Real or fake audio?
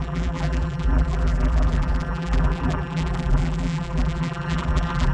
fake